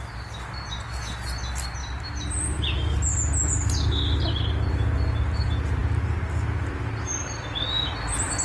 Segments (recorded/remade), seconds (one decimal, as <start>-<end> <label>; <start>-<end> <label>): 0.0-8.4 recorded